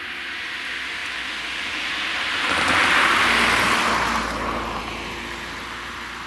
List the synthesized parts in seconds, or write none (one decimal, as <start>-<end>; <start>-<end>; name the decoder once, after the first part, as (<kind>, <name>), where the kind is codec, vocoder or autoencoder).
none